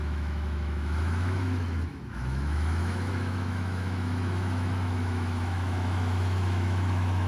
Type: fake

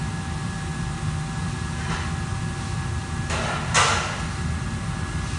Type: real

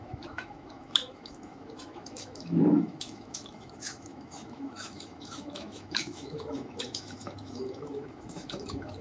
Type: fake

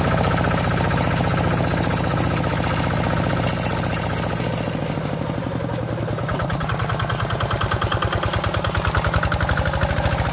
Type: real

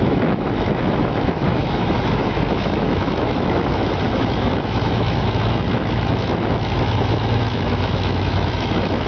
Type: fake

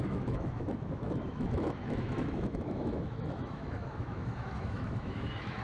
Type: fake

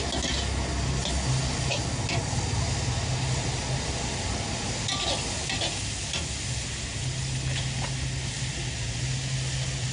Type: real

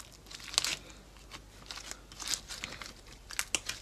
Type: real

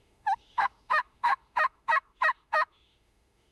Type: fake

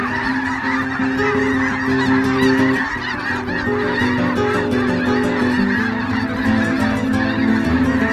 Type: real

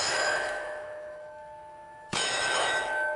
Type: fake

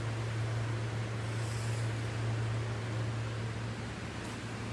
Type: real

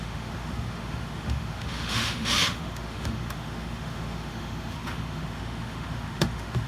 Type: fake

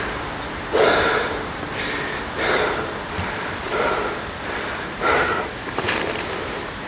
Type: real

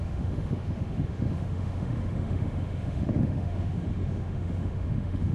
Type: fake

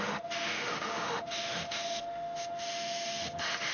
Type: fake